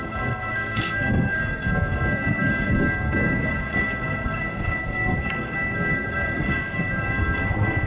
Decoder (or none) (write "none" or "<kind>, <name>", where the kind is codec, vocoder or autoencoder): codec, SNAC